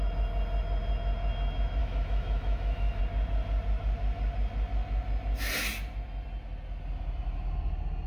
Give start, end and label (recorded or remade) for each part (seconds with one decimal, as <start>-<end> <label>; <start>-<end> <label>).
0.0-1.8 recorded; 1.8-3.0 remade; 3.0-8.1 recorded